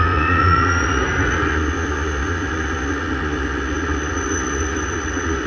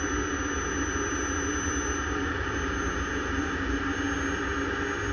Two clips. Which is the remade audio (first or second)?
first